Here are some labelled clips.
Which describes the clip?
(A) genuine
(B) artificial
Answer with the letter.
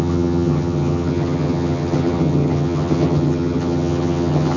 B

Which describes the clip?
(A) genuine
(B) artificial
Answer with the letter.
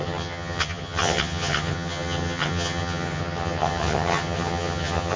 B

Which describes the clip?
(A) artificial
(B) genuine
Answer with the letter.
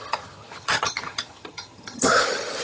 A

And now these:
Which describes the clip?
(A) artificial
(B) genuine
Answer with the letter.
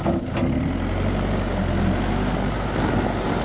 B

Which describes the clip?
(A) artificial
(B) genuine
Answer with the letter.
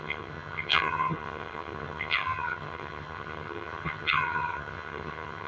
A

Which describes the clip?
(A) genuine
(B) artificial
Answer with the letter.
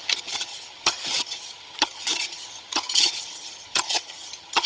B